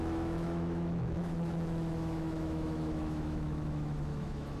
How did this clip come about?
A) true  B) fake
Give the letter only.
B